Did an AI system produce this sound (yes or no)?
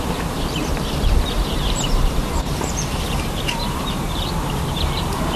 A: yes